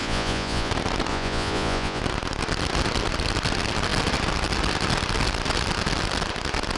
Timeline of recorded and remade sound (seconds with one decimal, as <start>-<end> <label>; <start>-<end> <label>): 0.0-0.7 remade; 0.7-1.1 recorded; 1.1-2.0 remade; 2.0-6.8 recorded